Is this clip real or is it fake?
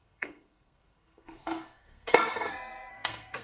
fake